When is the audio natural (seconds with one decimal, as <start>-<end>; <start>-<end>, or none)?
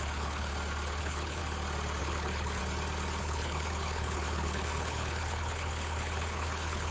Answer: 0.5-1.0; 1.4-2.0; 2.6-3.2